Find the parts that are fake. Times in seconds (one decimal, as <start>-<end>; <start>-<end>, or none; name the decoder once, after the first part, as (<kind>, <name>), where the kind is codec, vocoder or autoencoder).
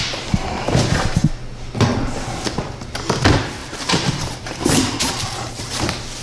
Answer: 3.6-5.5 (vocoder, BigVGAN v2)